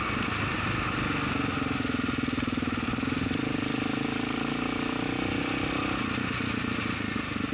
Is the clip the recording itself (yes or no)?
yes